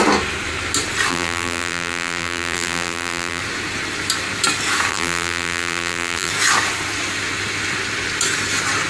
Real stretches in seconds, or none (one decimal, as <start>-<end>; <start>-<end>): 0.0-1.1; 3.4-4.9; 6.3-8.9

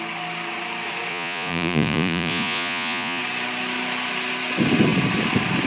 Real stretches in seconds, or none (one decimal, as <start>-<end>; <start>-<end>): 0.0-1.1; 3.2-5.7

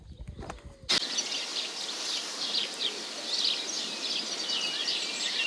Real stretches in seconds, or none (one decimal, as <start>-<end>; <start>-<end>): 0.0-1.5; 2.9-4.8

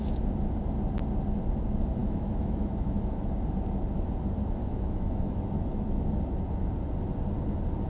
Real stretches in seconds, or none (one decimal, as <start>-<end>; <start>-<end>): 0.0-2.0; 3.3-4.6; 6.0-7.9